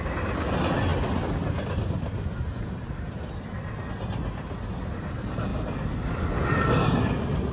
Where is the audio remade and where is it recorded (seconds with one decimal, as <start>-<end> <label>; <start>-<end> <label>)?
0.0-7.5 recorded